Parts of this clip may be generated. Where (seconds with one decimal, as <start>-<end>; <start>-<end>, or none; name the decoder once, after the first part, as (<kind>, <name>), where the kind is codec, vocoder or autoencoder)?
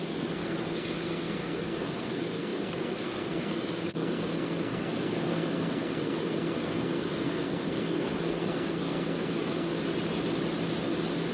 0.0-9.7 (codec, SNAC)